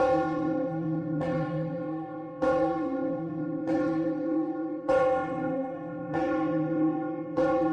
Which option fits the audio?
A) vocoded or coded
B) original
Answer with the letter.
A